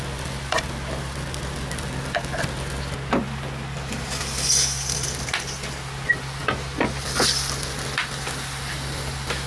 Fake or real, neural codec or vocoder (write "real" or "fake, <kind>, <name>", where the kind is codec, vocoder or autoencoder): real